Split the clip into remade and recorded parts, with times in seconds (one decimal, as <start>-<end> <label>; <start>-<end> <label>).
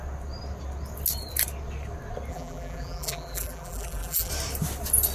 0.0-2.3 recorded; 2.3-4.3 remade; 4.3-5.1 recorded